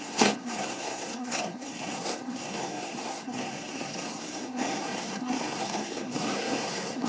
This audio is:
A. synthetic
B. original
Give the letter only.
A